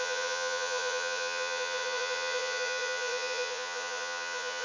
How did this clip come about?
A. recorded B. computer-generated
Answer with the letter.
B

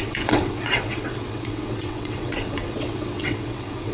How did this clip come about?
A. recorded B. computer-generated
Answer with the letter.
B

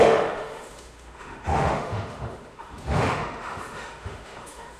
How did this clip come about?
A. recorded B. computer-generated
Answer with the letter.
B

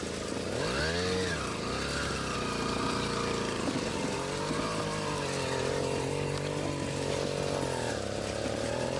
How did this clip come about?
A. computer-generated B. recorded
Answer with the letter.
B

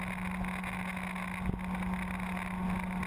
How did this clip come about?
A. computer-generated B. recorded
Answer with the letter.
B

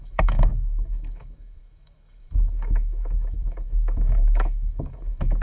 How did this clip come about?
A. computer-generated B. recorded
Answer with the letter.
A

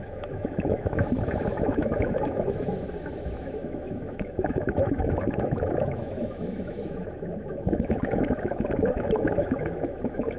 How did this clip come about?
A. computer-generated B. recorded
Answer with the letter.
A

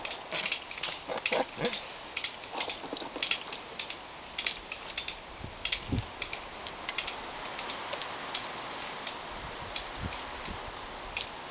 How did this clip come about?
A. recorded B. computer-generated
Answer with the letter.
A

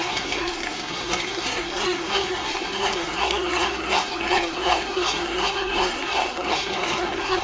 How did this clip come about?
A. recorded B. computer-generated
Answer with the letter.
B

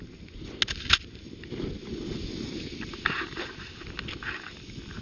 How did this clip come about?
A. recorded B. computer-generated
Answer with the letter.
A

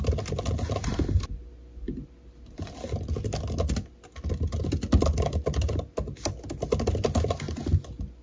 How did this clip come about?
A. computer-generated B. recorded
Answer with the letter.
B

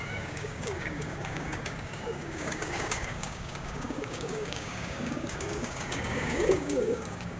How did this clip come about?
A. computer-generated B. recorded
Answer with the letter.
A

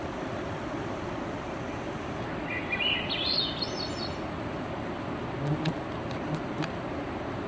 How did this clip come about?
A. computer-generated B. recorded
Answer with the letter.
B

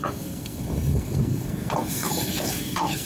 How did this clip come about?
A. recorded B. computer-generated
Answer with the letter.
B